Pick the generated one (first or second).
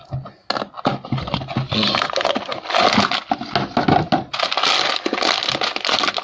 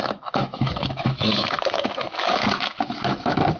second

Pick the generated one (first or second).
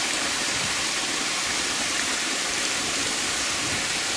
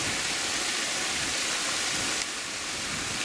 first